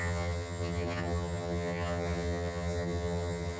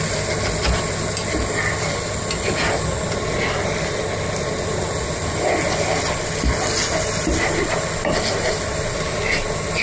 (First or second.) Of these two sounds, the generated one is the first